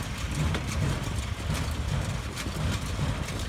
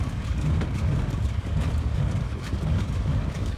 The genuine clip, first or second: first